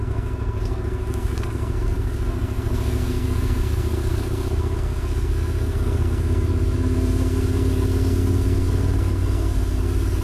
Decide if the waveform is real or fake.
fake